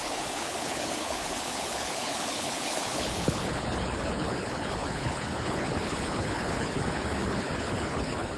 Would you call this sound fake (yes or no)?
yes